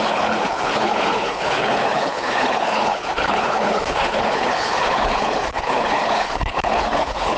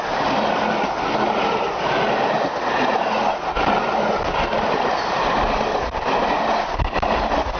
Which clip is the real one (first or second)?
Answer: second